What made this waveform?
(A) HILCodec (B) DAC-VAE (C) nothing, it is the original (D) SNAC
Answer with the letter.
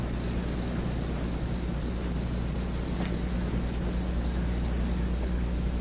C